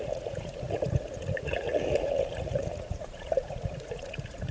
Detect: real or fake fake